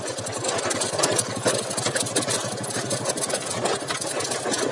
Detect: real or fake real